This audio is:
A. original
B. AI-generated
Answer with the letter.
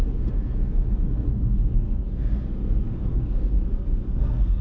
B